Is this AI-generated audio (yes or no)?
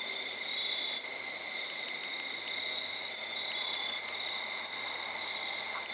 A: no